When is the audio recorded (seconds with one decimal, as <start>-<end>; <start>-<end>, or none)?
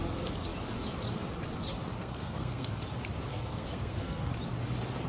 0.0-2.0; 2.7-3.3; 4.3-5.1